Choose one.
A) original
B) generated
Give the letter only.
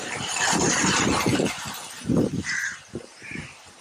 B